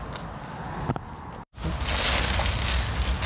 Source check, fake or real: real